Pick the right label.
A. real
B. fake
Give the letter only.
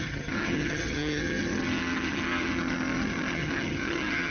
B